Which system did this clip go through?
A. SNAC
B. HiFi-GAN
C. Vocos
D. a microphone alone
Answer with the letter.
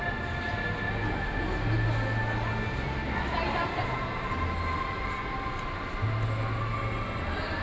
D